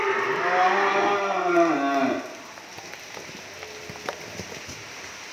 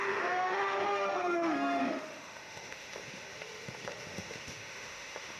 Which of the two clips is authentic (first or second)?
first